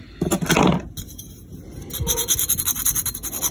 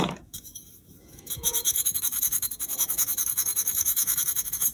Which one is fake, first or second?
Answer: second